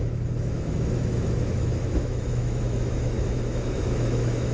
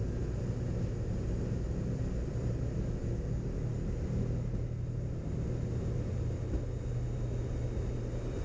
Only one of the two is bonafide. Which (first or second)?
second